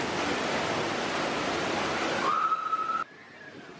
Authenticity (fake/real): real